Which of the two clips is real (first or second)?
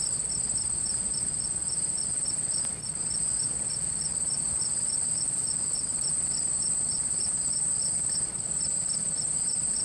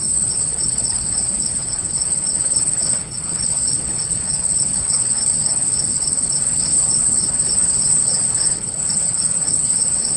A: first